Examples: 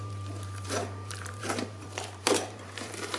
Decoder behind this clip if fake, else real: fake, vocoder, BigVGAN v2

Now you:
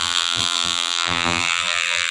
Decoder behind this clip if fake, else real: fake, vocoder, BigVGAN v2